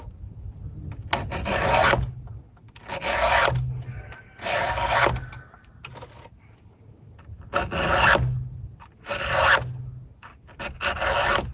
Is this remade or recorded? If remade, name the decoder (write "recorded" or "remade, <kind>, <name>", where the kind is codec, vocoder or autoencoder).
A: recorded